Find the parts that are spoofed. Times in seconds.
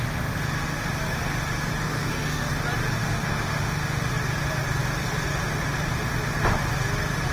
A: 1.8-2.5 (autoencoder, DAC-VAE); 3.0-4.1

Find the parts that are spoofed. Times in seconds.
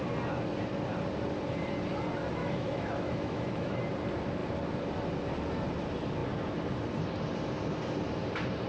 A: 2.4-3.8 (autoencoder, DAC-VAE)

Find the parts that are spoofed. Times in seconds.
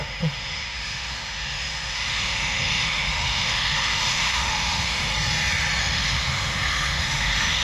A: 0.0-5.1 (autoencoder, DAC-VAE); 5.8-7.6